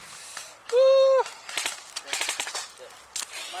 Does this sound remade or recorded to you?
recorded